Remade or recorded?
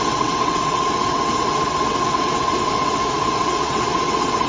remade